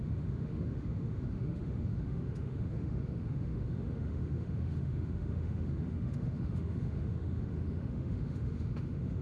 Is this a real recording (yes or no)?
no